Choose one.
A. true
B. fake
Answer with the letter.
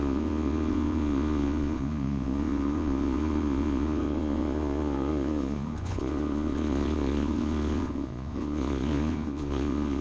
B